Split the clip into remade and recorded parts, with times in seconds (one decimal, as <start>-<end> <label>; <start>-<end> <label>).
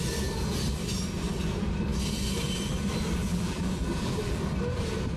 0.0-3.3 recorded; 3.3-4.4 remade; 4.4-5.2 recorded